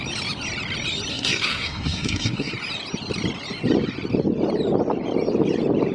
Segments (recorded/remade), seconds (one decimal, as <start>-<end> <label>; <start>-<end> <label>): 0.0-1.1 recorded; 1.1-2.5 remade; 2.5-5.9 recorded